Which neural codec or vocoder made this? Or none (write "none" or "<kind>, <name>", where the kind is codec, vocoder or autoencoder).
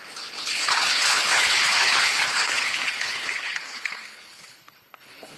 codec, HILCodec